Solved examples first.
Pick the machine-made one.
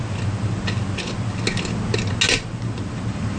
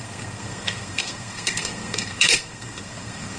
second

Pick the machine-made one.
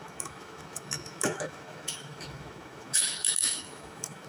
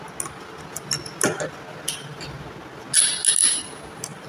first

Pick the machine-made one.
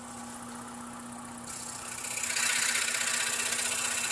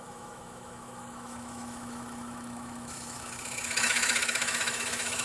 second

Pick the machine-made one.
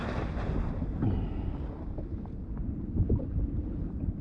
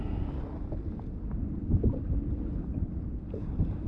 first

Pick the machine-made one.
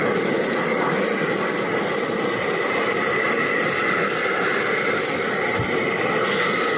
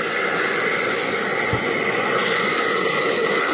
second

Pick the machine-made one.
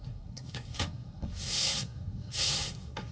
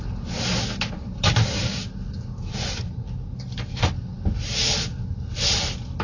first